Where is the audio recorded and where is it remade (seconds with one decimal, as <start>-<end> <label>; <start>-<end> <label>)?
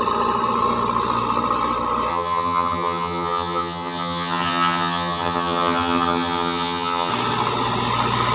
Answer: 0.0-2.1 recorded; 2.1-7.1 remade; 7.1-8.3 recorded